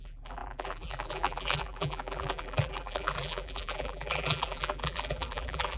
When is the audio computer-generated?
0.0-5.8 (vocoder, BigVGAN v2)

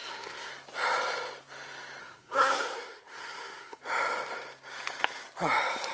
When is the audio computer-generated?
0.0-0.5 (codec, SNAC); 2.0-3.8

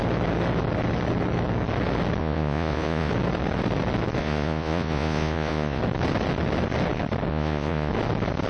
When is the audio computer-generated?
2.2-3.1 (vocoder, Vocos); 4.2-5.8; 7.3-7.9

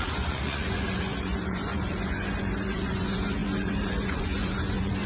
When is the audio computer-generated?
0.0-5.1 (vocoder, Vocos)